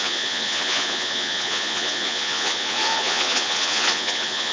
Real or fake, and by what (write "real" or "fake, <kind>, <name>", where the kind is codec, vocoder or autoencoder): fake, vocoder, Vocos